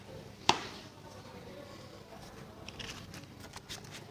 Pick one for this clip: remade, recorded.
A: remade